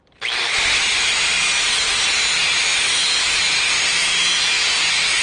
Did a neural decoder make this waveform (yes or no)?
no